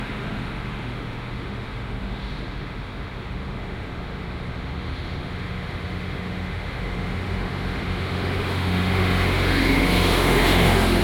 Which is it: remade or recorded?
remade